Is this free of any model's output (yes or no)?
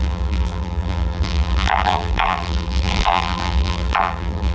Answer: no